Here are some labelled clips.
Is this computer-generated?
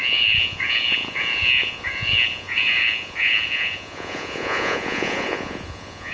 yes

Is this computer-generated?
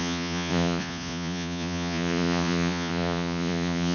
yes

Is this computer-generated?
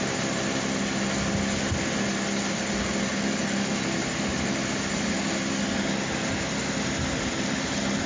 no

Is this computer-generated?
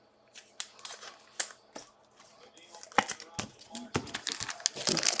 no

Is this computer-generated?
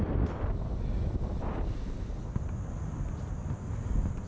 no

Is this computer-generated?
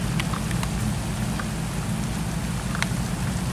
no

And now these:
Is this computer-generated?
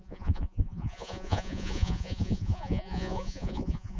yes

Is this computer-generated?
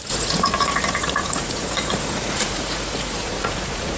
yes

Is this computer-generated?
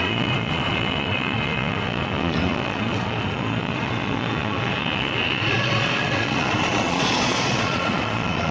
yes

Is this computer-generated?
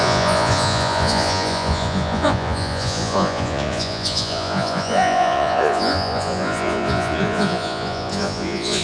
yes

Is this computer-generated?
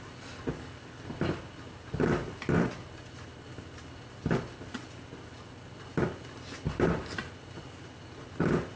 no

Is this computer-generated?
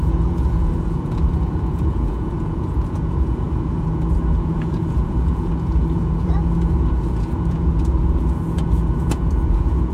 yes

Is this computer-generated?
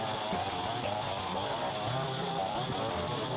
no